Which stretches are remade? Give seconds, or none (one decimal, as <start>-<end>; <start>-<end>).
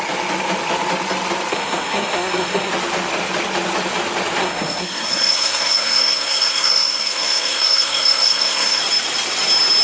1.5-2.7; 4.4-8.8